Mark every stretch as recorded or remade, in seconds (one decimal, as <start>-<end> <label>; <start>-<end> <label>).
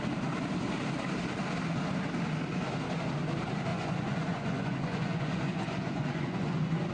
0.0-3.7 recorded; 3.7-6.9 remade